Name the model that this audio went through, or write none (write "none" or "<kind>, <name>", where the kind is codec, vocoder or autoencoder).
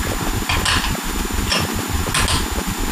none